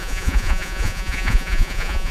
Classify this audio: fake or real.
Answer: fake